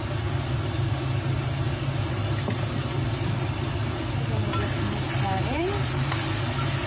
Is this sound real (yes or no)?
yes